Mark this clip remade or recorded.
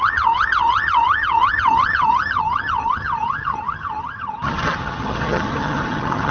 remade